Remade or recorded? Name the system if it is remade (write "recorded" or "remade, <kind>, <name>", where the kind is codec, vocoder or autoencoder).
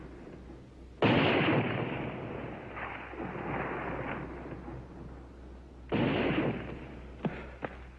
recorded